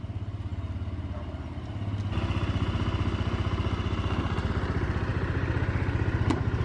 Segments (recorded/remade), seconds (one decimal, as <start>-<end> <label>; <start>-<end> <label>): 0.0-6.6 recorded